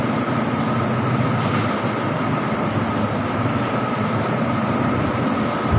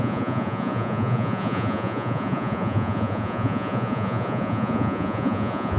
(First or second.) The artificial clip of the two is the second